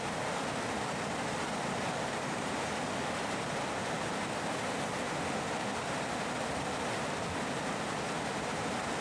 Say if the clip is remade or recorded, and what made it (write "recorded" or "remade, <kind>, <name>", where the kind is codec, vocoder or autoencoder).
recorded